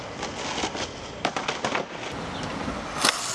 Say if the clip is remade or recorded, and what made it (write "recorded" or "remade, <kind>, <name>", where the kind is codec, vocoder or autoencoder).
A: recorded